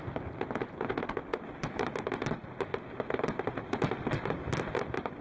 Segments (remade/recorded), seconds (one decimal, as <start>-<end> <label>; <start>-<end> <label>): 0.0-5.2 remade